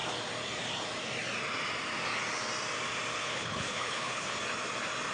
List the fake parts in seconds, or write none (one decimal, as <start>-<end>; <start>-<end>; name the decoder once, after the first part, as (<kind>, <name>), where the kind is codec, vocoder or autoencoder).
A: 3.2-4.4 (codec, HILCodec)

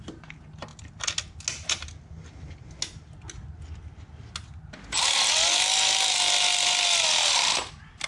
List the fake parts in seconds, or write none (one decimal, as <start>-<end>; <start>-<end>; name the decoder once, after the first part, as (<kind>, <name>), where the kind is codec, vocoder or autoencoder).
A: none

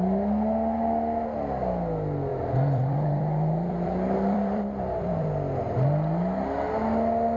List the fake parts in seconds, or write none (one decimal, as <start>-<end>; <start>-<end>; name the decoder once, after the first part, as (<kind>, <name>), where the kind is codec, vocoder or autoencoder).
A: 2.3-5.3 (vocoder, BigVGAN v2)

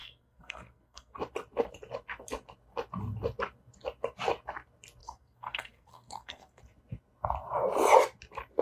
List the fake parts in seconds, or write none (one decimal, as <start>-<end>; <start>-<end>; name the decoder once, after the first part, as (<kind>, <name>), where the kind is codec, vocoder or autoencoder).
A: 0.0-1.2 (codec, SNAC); 5.0-6.6

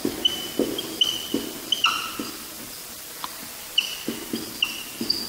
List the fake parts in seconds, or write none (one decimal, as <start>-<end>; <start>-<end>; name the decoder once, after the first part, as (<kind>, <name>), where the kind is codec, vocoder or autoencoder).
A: none

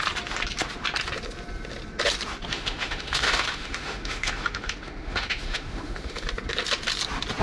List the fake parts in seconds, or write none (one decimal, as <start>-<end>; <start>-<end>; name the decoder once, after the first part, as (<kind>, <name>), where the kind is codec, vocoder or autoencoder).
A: 2.5-6.3 (autoencoder, DAC-VAE)